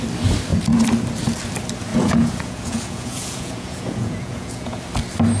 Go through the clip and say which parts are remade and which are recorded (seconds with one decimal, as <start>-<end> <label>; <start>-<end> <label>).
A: 0.0-1.9 recorded; 1.9-4.8 remade; 4.8-5.4 recorded